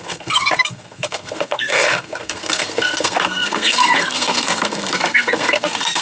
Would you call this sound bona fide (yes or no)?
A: no